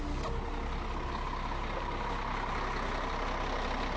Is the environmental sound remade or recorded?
recorded